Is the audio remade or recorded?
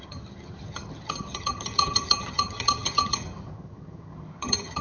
remade